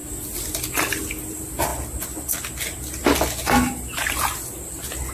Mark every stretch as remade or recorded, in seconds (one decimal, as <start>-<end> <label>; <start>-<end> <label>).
0.0-5.1 recorded